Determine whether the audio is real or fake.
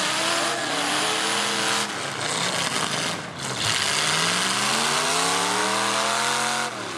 real